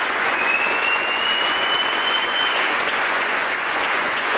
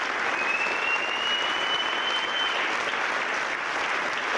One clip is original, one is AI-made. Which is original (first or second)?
second